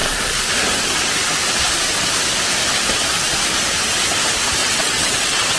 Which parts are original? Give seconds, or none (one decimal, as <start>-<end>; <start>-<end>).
0.0-4.6